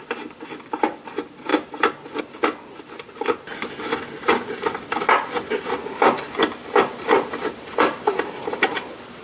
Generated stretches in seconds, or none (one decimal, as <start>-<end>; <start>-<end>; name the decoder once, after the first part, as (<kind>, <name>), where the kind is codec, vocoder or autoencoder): none